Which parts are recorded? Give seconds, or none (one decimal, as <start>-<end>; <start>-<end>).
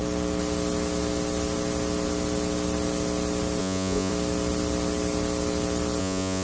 0.0-3.6; 4.1-6.0